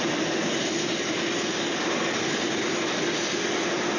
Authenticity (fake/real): real